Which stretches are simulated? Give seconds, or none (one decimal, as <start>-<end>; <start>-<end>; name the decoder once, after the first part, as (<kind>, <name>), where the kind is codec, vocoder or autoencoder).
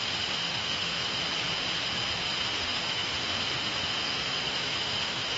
0.0-1.2 (autoencoder, DAC-VAE); 2.3-5.4